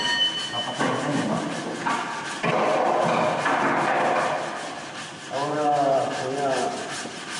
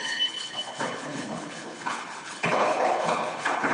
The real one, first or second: first